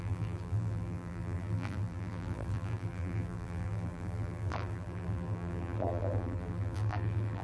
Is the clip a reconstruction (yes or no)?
yes